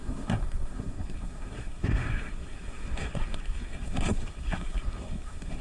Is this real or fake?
fake